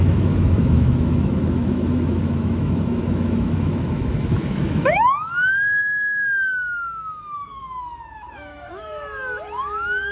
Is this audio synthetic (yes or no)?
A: yes